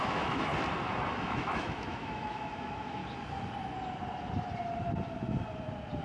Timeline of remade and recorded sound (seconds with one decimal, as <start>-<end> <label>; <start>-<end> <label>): 0.0-0.5 remade; 0.5-1.1 recorded; 1.1-3.0 remade; 3.0-6.0 recorded